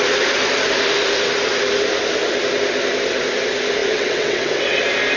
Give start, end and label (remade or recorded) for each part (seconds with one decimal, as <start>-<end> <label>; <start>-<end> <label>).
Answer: 0.0-3.8 recorded; 3.8-4.8 remade; 4.8-5.2 recorded